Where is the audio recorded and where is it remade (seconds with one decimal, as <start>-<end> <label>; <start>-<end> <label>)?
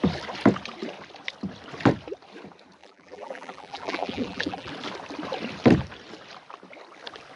0.0-2.8 recorded; 2.8-4.7 remade; 4.7-7.4 recorded